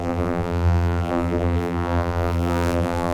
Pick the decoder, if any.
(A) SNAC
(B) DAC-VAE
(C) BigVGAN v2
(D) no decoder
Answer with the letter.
C